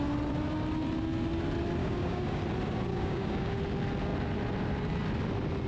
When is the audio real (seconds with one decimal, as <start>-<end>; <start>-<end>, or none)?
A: 0.0-1.8; 2.4-2.9; 3.6-5.7